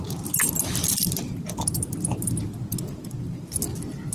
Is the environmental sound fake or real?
real